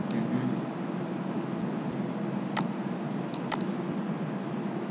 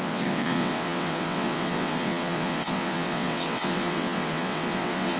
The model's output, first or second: second